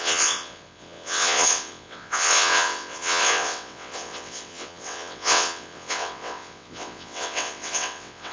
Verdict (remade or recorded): remade